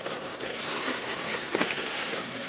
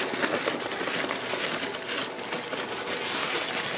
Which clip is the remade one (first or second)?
first